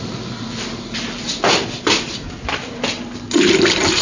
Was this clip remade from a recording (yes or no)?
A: yes